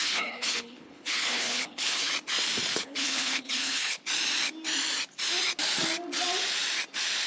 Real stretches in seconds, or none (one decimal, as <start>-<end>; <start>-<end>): 2.1-2.7; 4.0-7.3